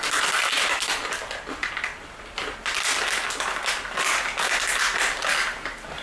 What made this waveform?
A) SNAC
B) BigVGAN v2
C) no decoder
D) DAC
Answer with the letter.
C